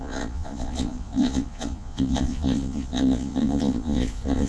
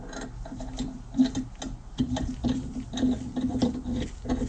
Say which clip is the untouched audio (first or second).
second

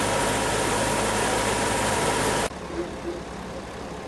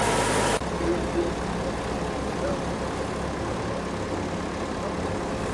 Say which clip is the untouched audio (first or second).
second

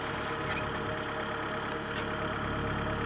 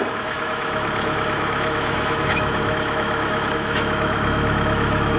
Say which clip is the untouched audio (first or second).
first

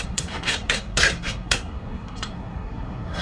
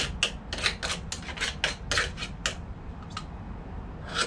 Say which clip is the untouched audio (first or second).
second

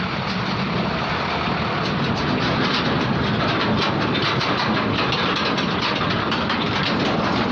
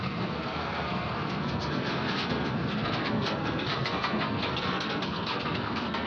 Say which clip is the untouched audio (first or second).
first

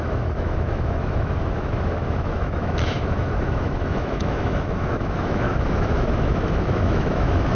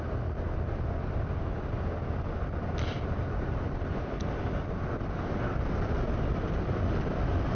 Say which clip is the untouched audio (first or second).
second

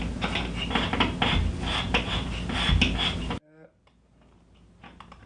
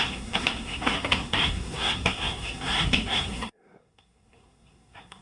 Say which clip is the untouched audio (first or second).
first